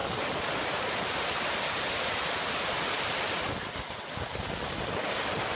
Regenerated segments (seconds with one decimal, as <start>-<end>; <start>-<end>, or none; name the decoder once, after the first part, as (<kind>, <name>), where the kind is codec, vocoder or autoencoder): none